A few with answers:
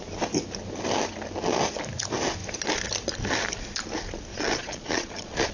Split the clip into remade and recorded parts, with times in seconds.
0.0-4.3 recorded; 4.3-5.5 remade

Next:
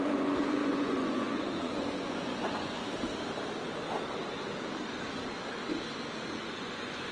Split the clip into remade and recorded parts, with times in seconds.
0.0-2.8 remade; 2.8-6.4 recorded; 6.4-7.1 remade

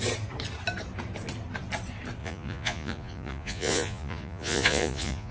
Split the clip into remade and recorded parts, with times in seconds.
0.0-2.2 recorded; 2.2-5.3 remade

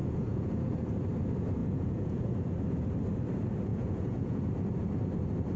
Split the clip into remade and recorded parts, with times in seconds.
0.0-0.7 remade; 0.7-1.6 recorded; 1.6-2.2 remade; 2.2-3.7 recorded; 3.7-4.4 remade; 4.4-5.6 recorded

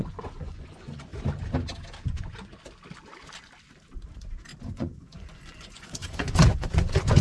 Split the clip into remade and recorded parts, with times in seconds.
0.0-1.1 remade; 1.1-2.1 recorded; 2.1-2.5 remade; 2.5-4.7 recorded; 4.7-7.2 remade

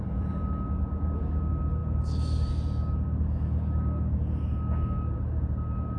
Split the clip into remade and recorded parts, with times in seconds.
0.0-6.0 recorded

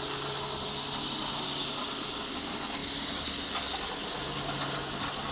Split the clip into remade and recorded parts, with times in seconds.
0.0-5.3 recorded

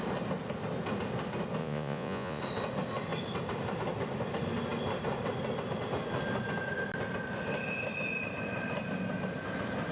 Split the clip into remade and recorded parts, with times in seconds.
0.0-1.6 recorded; 1.6-2.4 remade; 2.4-9.9 recorded